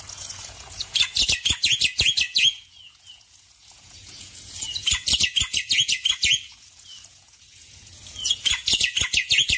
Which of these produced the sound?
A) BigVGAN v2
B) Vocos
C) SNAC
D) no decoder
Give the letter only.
B